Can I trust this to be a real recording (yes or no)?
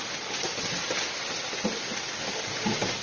yes